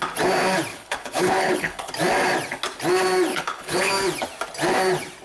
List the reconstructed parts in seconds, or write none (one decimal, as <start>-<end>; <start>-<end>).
0.7-1.9; 3.3-3.9